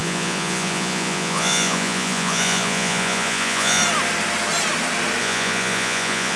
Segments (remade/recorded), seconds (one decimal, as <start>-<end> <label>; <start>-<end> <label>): 0.0-3.8 remade; 3.8-5.2 recorded; 5.2-6.4 remade